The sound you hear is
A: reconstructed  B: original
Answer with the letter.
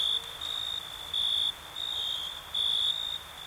B